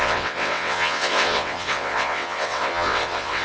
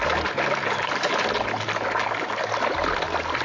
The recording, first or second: second